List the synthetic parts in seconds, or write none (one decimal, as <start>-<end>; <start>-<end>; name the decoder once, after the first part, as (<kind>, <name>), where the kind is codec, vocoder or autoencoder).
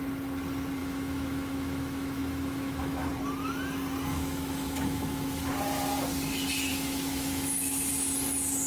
0.8-3.1 (autoencoder, DAC-VAE); 4.1-5.5; 6.7-7.9